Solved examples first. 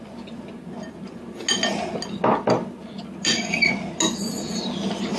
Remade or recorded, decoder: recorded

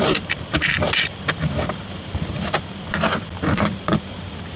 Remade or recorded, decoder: remade, vocoder, BigVGAN v2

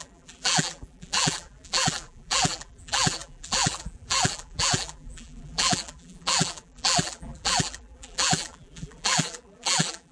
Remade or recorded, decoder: remade, vocoder, BigVGAN v2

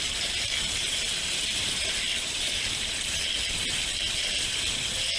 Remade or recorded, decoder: remade, vocoder, BigVGAN v2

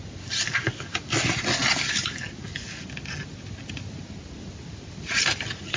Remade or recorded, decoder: recorded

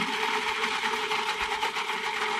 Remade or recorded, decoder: remade, vocoder, BigVGAN v2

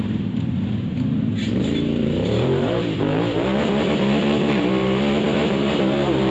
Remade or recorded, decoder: remade, vocoder, BigVGAN v2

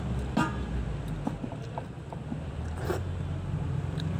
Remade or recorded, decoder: recorded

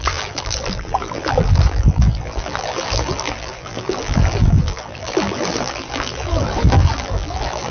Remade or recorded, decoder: remade, vocoder, BigVGAN v2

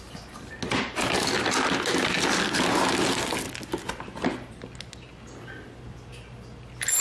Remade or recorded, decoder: recorded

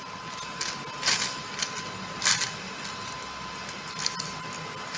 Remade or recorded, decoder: recorded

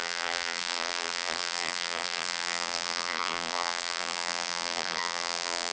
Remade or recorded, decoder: remade, vocoder, BigVGAN v2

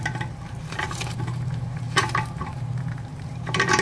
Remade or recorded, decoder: remade, vocoder, BigVGAN v2